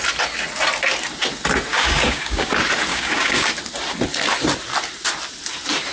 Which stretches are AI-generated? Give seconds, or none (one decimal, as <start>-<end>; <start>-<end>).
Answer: 1.7-2.5; 2.9-3.5